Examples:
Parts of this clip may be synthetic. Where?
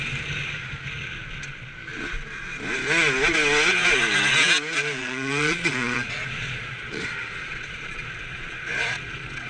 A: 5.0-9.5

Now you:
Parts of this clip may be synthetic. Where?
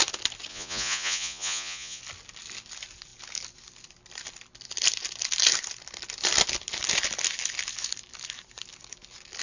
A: 0.5-2.0